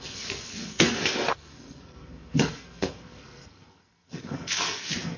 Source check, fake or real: fake